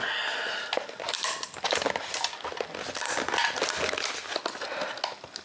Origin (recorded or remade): recorded